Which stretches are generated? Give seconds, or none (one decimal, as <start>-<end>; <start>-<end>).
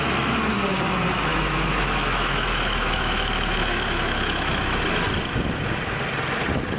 1.3-4.8